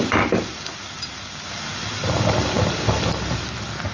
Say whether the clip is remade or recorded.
recorded